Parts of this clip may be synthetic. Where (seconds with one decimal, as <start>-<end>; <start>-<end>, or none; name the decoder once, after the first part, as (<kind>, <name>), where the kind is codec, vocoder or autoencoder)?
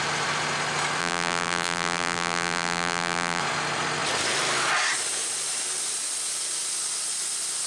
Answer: 1.0-3.4 (vocoder, BigVGAN v2)